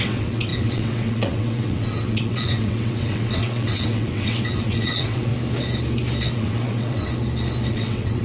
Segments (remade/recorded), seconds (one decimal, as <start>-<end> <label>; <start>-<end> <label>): 0.0-5.3 remade; 5.3-6.3 recorded; 6.3-7.1 remade; 7.1-7.7 recorded; 7.7-8.2 remade